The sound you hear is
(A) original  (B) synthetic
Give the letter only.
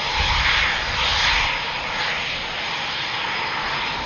A